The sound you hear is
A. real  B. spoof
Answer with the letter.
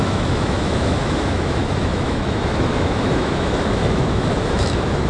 B